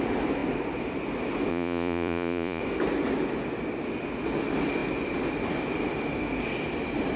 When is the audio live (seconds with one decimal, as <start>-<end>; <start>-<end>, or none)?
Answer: 0.0-1.5; 2.6-7.2

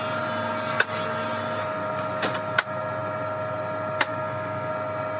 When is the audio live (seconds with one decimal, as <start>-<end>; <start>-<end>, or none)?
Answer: 0.0-4.1; 4.7-5.2

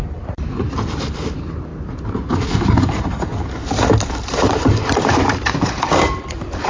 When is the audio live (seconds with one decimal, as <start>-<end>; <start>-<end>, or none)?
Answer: 1.7-2.9; 3.3-4.0

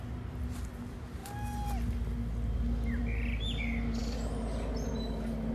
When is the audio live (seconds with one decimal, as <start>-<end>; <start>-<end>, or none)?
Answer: 0.0-5.5

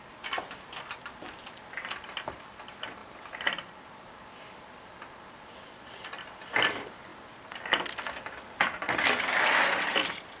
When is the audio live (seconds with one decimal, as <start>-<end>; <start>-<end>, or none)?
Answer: 7.1-9.2

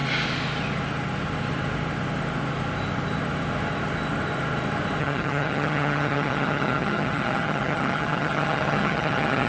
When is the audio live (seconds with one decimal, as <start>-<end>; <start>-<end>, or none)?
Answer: 0.0-5.0